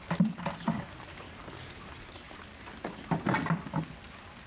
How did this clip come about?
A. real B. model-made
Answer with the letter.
A